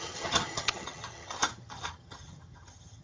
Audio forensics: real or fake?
fake